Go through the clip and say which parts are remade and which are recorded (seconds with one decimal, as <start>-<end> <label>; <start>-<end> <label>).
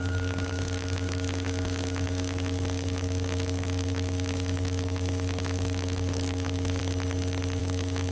0.0-6.8 remade; 6.8-7.6 recorded; 7.6-8.1 remade